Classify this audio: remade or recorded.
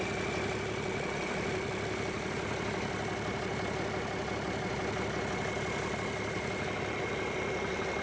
recorded